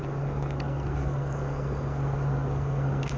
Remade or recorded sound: remade